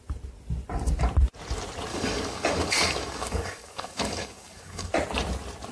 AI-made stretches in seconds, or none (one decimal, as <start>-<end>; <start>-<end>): 1.9-4.9